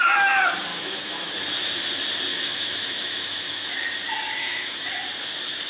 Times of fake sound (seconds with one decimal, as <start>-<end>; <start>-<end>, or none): 0.7-1.3; 2.3-3.7; 4.4-4.9